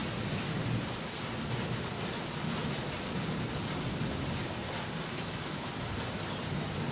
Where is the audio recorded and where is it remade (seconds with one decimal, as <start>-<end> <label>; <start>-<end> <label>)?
0.0-5.1 recorded; 5.1-5.7 remade; 5.7-6.9 recorded